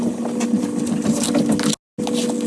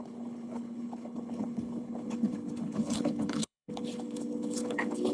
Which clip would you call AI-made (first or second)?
second